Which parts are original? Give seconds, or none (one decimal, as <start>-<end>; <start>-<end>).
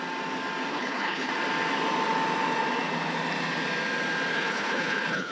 0.0-0.7; 1.3-4.3